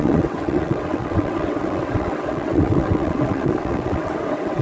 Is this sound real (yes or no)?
no